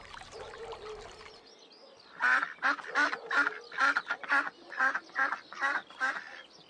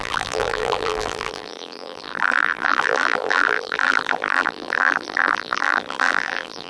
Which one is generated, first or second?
second